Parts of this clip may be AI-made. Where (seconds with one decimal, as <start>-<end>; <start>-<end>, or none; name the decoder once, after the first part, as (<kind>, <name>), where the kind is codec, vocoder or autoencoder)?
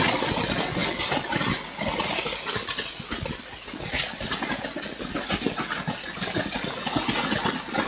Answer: none